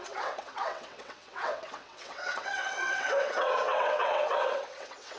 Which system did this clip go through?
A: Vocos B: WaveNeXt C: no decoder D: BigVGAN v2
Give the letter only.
B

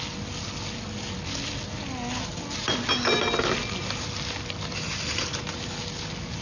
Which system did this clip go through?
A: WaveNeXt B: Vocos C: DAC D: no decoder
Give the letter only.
D